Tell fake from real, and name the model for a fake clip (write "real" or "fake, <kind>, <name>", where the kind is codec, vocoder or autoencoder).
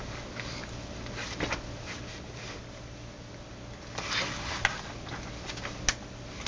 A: real